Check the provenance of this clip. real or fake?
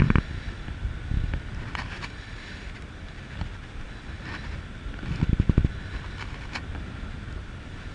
real